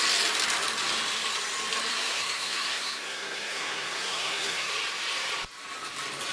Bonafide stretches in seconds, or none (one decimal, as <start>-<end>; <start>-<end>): 0.0-1.9; 4.7-6.3

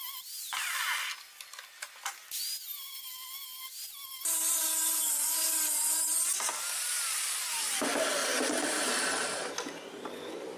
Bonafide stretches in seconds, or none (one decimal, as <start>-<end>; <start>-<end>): 0.0-8.2; 9.5-10.6